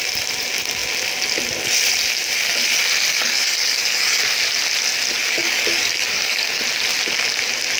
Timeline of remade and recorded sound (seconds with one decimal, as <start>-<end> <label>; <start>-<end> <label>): 0.0-3.1 recorded; 3.1-4.2 remade; 4.2-5.2 recorded; 5.2-6.6 remade; 6.6-7.8 recorded